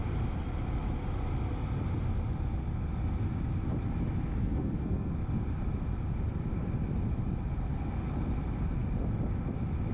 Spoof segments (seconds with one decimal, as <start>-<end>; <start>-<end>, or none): 4.4-5.1